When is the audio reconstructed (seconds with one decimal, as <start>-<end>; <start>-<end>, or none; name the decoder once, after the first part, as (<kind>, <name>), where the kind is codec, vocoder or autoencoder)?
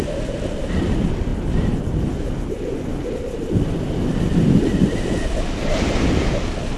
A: none